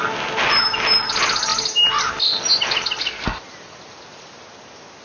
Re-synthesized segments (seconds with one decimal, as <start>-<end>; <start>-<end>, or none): none